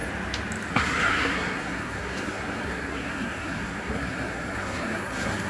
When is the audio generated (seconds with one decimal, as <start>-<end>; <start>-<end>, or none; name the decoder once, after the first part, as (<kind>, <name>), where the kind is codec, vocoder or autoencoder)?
0.7-5.5 (codec, SNAC)